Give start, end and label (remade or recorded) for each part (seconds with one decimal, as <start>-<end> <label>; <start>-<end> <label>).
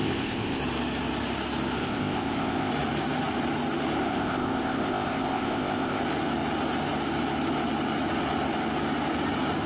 0.0-0.6 remade; 0.6-1.8 recorded; 1.8-2.7 remade; 2.7-4.0 recorded; 4.0-6.0 remade; 6.0-9.7 recorded